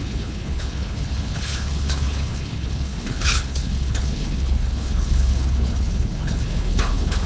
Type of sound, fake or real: fake